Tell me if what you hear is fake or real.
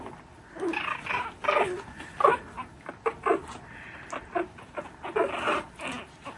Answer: real